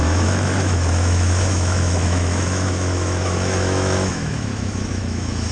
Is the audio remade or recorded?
remade